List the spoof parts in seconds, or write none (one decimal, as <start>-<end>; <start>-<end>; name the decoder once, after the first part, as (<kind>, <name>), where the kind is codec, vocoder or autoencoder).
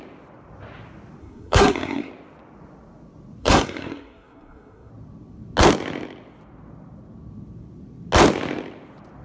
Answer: 1.2-2.1 (codec, SNAC); 3.4-4.9